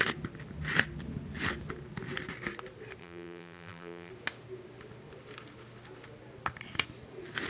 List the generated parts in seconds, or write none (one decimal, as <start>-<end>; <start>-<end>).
3.0-4.1